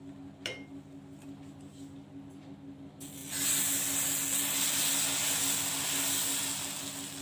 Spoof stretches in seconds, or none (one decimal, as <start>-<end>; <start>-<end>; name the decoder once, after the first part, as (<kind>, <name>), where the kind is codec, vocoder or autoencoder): 5.2-5.7 (vocoder, BigVGAN v2)